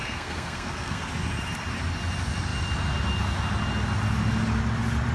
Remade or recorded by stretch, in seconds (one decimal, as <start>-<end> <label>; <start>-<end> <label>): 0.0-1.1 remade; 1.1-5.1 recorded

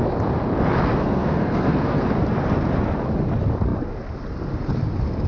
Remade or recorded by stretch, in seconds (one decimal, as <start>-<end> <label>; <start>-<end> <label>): 0.0-0.9 recorded; 0.9-2.0 remade; 2.0-5.3 recorded

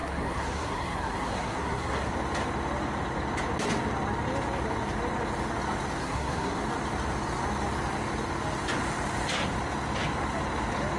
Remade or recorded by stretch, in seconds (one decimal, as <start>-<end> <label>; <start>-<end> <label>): 0.0-2.1 remade; 2.1-6.0 recorded; 6.0-6.6 remade; 6.6-11.0 recorded